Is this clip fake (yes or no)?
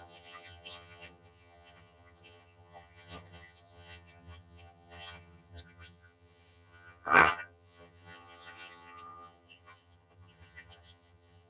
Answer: yes